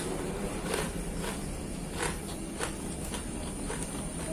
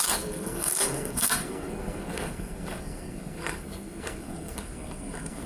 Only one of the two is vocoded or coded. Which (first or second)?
second